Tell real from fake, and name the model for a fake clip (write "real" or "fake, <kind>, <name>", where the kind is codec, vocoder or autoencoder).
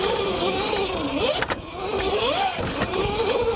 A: real